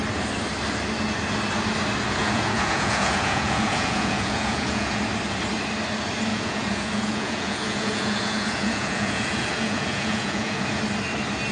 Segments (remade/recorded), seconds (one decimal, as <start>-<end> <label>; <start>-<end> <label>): 0.0-2.2 recorded; 2.2-5.0 remade; 5.0-6.3 recorded; 6.3-10.8 remade; 10.8-11.5 recorded